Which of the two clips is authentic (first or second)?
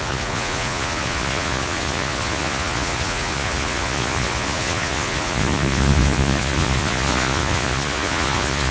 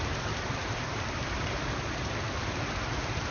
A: second